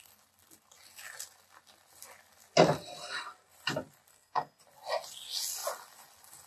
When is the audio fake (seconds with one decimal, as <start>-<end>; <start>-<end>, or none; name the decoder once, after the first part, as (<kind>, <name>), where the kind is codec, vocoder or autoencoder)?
4.1-4.6 (codec, SNAC)